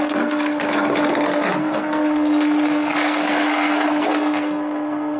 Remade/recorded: remade